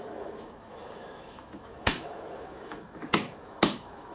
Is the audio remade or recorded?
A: remade